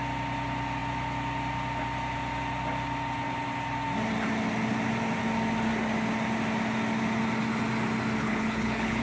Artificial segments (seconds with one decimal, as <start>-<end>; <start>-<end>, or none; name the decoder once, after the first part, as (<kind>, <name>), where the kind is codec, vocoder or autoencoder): 8.2-9.0 (codec, HILCodec)